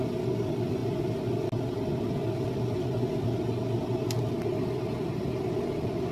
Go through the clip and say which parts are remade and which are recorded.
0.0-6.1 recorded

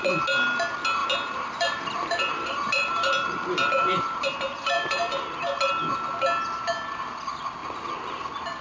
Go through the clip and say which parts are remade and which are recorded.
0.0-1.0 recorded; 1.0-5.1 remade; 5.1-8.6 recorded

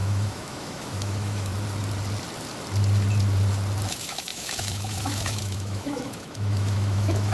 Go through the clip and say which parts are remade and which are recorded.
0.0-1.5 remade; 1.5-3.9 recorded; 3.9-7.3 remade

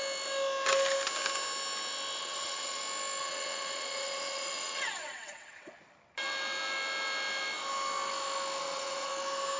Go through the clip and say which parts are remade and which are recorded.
0.0-2.2 recorded; 2.2-2.8 remade; 2.8-3.2 recorded; 3.2-5.7 remade; 5.7-8.6 recorded; 8.6-9.1 remade; 9.1-9.6 recorded

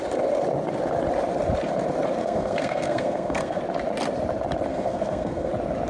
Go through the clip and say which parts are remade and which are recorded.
0.0-2.2 recorded; 2.2-3.6 remade; 3.6-4.7 recorded; 4.7-5.5 remade; 5.5-5.9 recorded